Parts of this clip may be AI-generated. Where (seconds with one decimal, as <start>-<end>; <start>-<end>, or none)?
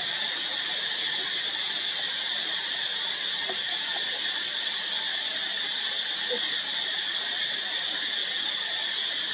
none